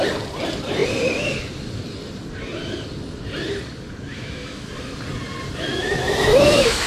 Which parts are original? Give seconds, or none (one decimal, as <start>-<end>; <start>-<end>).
0.0-4.1; 4.7-5.7